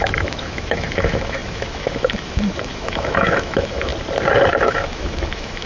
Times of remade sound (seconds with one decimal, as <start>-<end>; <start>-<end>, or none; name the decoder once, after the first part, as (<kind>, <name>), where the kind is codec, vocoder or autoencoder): 0.0-3.9 (autoencoder, DAC-VAE); 4.6-5.7